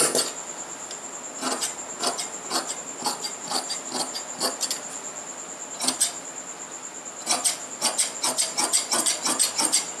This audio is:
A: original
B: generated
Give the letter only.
A